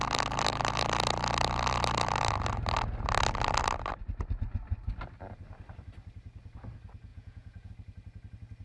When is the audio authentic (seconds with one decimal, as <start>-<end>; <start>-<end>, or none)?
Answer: 0.0-7.1; 7.7-8.6